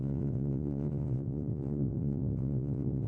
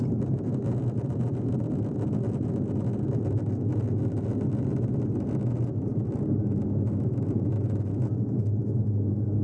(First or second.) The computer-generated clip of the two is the first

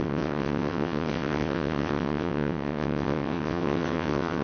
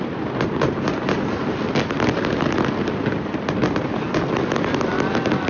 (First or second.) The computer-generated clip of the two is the first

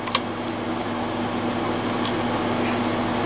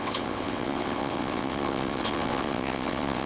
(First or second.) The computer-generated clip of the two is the second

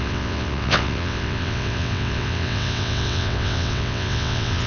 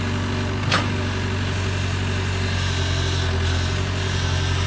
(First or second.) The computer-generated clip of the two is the first